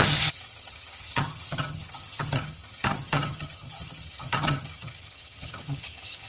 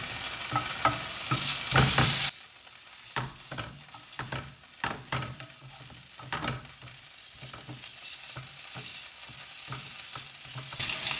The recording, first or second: second